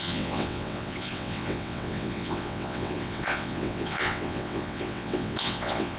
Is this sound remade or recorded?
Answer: remade